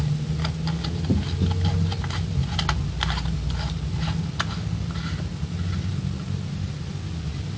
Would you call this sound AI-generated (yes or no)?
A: no